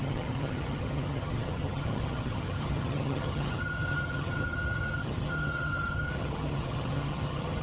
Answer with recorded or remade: remade